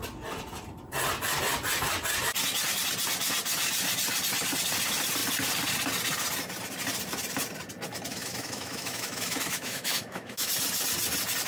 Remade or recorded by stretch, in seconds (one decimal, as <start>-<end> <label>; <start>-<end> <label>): 0.0-8.1 recorded; 8.1-10.5 remade; 10.5-11.5 recorded